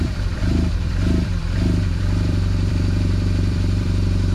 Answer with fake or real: fake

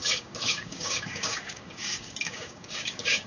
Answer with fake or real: fake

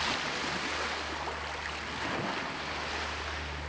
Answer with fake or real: real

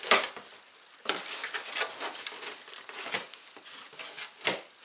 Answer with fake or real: real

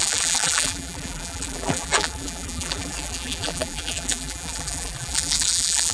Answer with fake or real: fake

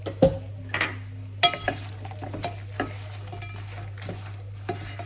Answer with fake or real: real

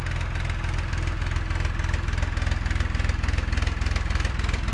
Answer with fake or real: real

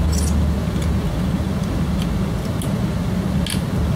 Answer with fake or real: real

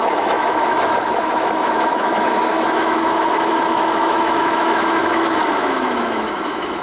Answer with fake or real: fake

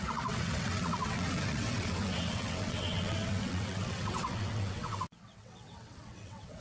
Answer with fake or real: fake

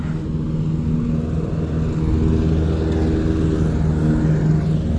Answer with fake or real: real